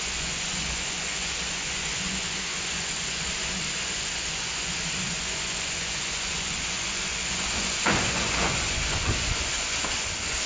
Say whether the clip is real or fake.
fake